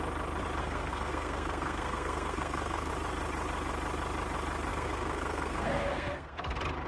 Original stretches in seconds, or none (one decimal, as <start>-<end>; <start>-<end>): 0.0-0.6; 2.9-4.7; 6.4-6.9